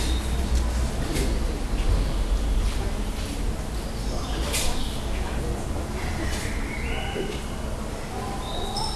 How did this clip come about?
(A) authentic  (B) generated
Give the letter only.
A